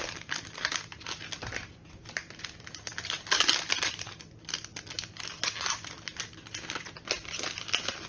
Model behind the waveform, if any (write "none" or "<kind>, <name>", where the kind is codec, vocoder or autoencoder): none